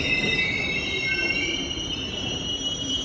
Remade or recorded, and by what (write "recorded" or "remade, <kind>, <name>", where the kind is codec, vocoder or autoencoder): remade, vocoder, BigVGAN v2